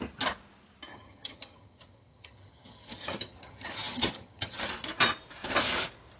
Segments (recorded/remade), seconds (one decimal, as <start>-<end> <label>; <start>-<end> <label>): 0.0-0.9 recorded; 0.9-4.6 remade; 4.6-6.2 recorded